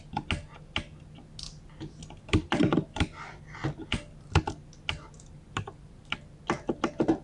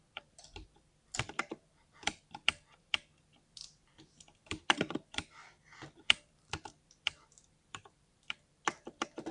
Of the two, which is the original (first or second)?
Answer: first